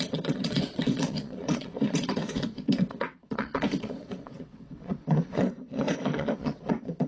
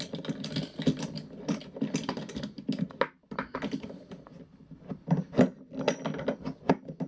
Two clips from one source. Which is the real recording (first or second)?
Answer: second